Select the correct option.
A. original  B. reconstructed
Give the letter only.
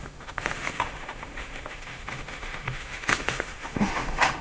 B